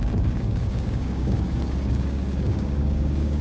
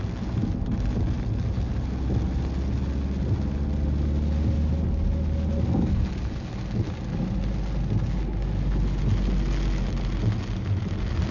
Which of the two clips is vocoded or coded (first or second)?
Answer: first